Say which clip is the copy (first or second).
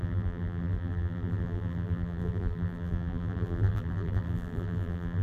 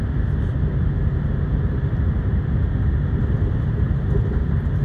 first